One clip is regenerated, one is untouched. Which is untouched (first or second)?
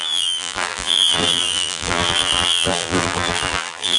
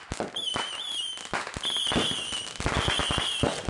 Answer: second